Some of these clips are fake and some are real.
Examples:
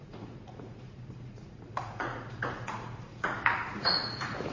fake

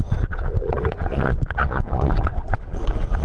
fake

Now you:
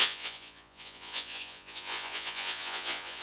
fake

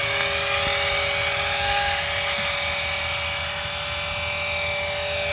real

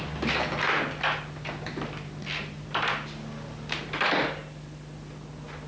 real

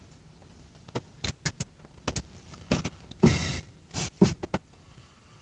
real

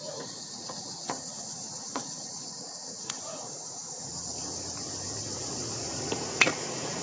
fake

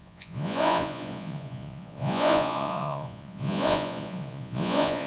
fake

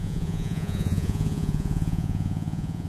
fake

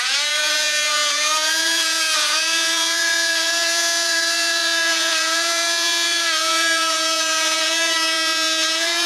fake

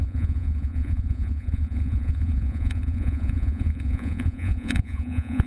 fake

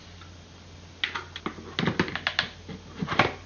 real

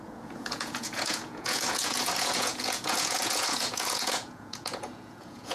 fake